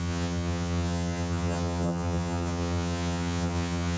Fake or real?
fake